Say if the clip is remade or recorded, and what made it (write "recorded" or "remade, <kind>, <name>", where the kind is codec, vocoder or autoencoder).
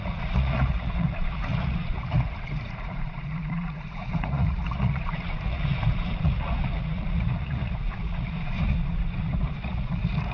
remade, vocoder, Vocos